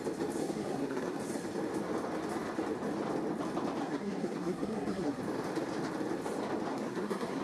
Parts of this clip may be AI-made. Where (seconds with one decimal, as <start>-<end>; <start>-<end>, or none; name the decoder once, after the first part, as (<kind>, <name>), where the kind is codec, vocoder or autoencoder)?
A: 0.4-1.2 (codec, SNAC); 3.8-5.2; 6.7-7.4